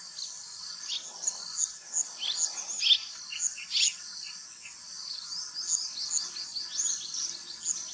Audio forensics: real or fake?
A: real